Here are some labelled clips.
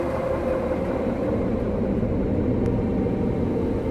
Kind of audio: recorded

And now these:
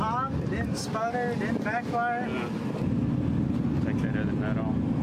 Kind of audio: recorded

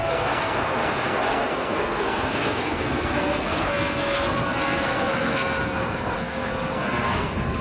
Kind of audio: remade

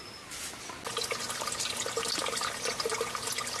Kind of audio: recorded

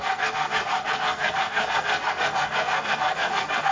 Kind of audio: remade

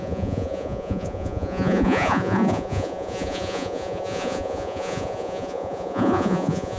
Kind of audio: remade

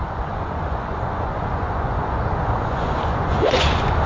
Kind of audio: remade